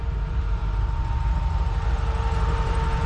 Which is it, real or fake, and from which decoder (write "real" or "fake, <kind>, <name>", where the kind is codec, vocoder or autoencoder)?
fake, vocoder, BigVGAN v2